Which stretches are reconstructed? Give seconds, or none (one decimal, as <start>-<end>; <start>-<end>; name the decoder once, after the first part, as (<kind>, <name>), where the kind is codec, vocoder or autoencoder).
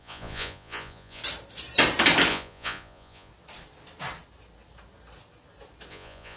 0.0-1.2 (vocoder, Vocos); 2.3-3.3; 5.9-6.4